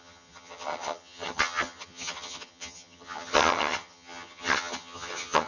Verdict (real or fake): fake